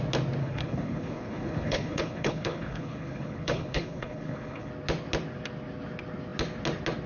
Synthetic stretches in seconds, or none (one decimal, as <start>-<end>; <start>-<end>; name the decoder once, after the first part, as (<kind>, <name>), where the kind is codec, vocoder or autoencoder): 0.4-4.7 (codec, HILCodec)